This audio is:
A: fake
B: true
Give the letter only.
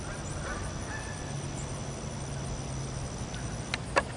B